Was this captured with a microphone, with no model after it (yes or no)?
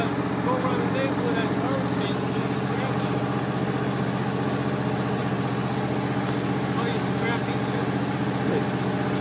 yes